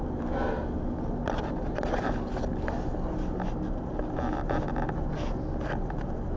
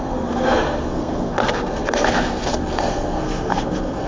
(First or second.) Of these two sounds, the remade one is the second